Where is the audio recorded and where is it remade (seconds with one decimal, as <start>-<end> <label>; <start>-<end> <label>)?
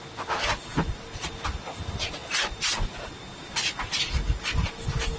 0.0-5.2 recorded